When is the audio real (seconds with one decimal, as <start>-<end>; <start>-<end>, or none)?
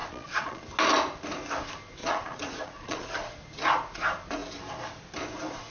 0.6-2.0; 3.1-5.7